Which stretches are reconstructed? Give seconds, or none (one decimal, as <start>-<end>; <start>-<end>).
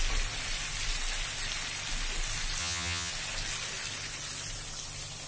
2.6-3.1